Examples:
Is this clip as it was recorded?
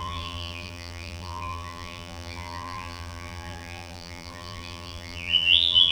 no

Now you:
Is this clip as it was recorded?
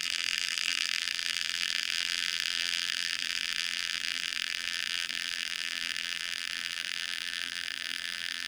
no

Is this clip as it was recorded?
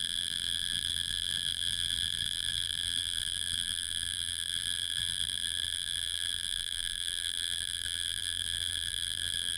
no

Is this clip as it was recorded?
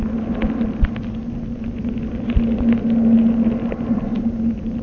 yes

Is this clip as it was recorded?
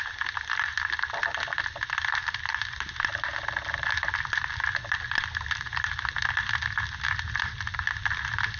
yes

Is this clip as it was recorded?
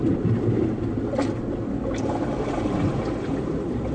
yes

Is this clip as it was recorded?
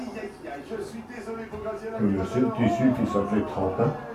yes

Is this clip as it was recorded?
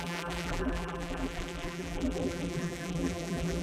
no